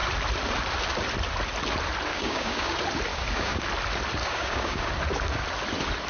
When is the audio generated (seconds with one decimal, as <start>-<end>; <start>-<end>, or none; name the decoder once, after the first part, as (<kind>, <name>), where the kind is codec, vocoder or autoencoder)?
2.1-2.7 (codec, DAC); 3.1-3.6; 4.2-4.9